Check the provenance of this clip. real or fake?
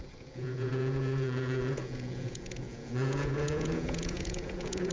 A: fake